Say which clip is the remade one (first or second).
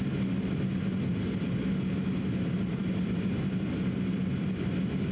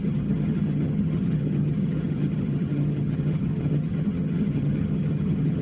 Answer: second